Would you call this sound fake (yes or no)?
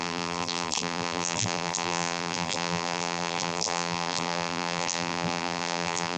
yes